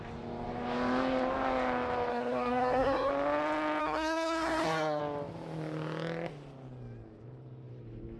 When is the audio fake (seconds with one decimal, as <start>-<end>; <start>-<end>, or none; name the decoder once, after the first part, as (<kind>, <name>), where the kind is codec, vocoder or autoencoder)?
2.1-3.1 (codec, SNAC); 3.8-5.0